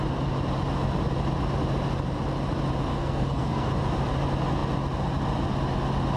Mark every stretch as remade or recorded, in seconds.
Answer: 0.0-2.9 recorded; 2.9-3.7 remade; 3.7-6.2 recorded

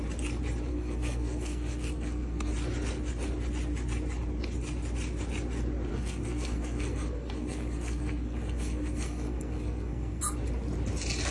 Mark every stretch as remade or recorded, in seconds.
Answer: 0.0-0.7 recorded; 0.7-2.5 remade; 2.5-5.9 recorded; 5.9-10.2 remade; 10.2-11.3 recorded

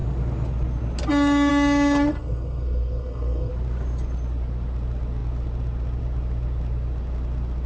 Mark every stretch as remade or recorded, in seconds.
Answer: 0.0-2.1 recorded; 2.1-3.5 remade; 3.5-7.7 recorded